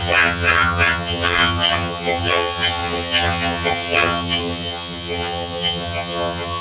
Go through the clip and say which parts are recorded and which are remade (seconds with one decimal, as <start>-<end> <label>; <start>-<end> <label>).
0.0-6.6 remade